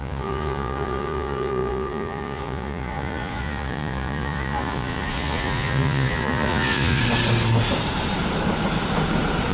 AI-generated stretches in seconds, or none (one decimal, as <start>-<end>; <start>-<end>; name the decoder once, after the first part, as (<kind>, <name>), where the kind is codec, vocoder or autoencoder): 0.0-7.0 (vocoder, Vocos)